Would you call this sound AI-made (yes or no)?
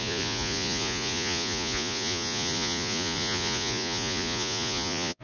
yes